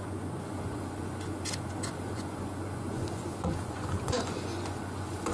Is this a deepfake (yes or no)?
yes